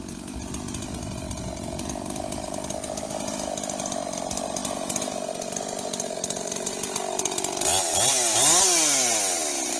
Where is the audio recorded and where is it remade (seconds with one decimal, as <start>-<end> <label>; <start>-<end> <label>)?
0.0-9.8 recorded